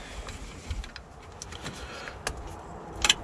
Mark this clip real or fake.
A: real